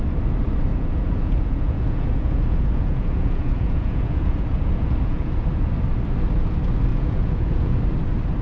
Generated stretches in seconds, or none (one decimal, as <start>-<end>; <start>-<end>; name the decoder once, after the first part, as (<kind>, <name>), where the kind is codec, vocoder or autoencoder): 0.7-5.7 (vocoder, Vocos); 6.9-7.8